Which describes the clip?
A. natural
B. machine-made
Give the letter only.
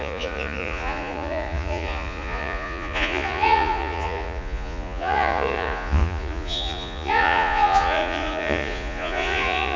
B